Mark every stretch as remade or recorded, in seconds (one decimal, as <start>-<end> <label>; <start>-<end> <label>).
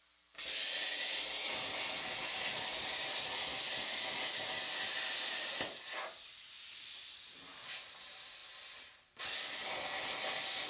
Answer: 0.0-10.7 recorded